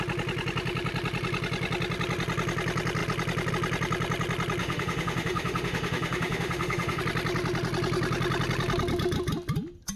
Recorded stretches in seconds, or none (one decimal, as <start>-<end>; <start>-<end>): 0.0-4.6; 7.0-10.0